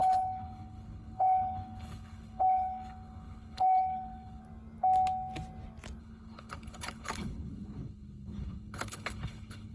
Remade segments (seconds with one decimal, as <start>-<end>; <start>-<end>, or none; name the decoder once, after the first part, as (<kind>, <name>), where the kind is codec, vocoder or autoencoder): 0.0-4.4 (codec, HILCodec); 6.0-9.7